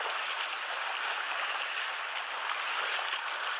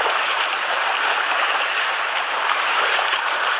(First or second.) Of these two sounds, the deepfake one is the second